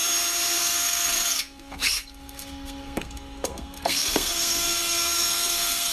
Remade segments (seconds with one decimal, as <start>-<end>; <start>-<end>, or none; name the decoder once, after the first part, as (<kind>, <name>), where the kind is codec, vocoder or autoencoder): 0.6-5.9 (codec, SNAC)

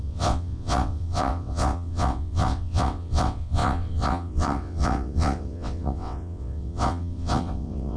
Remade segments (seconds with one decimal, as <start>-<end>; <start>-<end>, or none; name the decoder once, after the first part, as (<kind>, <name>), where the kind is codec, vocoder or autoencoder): 0.0-8.0 (vocoder, WaveNeXt)

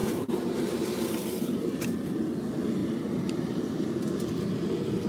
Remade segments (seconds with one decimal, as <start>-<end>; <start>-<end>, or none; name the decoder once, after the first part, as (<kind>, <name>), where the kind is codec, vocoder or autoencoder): 0.0-1.8 (vocoder, BigVGAN v2); 2.8-3.9

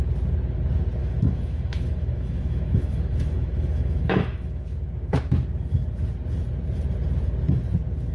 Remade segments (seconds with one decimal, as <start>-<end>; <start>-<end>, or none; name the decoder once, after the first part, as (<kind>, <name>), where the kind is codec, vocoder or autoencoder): 1.0-5.3 (autoencoder, DAC-VAE)

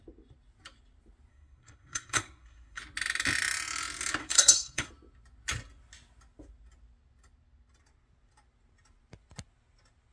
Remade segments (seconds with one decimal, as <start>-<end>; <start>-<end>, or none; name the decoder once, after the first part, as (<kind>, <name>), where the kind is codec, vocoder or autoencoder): 1.3-2.8 (codec, SNAC); 4.2-4.9

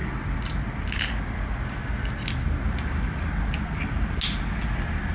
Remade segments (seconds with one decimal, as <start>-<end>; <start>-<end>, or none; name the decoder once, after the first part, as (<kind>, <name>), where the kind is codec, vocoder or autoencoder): none

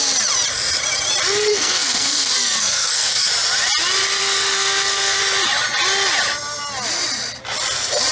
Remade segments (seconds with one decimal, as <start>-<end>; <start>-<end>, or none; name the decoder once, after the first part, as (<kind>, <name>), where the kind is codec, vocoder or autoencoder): 1.5-3.3 (codec, SNAC); 4.2-5.2